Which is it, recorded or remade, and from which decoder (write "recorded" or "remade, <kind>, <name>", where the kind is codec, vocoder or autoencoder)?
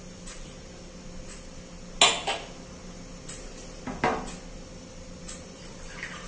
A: recorded